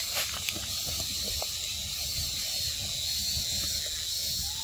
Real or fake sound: real